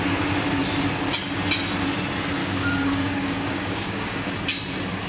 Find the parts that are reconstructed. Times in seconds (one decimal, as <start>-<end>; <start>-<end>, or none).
2.4-4.3